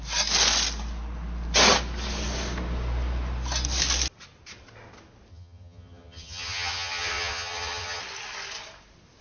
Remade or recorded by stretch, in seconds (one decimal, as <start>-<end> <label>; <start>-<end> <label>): 0.0-5.3 recorded; 5.3-8.0 remade; 8.0-9.2 recorded